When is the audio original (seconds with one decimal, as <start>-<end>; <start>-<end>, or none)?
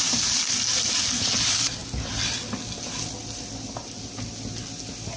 1.8-5.2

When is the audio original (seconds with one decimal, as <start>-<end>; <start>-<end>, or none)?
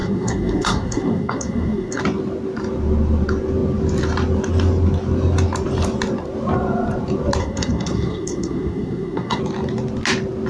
2.0-7.4; 9.4-10.5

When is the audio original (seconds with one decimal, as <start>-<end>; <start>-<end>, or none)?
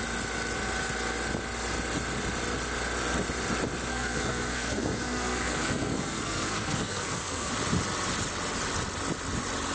0.0-3.9; 7.5-9.7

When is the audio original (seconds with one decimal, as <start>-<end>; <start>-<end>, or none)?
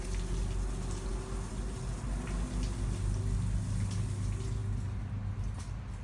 0.0-6.0